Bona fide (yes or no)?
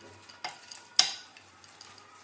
yes